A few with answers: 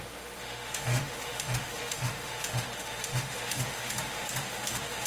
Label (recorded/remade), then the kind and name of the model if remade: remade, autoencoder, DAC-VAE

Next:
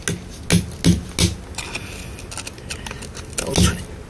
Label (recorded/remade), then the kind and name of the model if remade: recorded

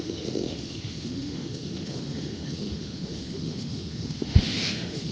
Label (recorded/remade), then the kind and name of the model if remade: remade, autoencoder, DAC-VAE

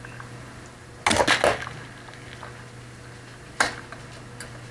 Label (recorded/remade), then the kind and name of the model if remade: recorded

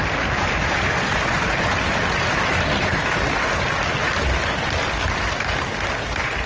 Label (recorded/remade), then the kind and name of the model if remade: recorded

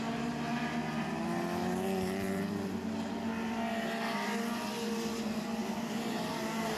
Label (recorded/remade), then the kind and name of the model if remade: recorded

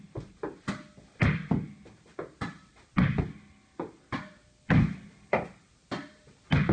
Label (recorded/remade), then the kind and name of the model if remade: recorded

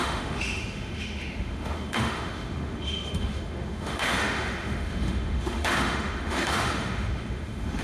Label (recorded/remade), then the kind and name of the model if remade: remade, autoencoder, DAC-VAE